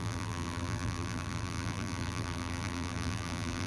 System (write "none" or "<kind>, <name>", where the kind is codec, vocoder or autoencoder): vocoder, BigVGAN v2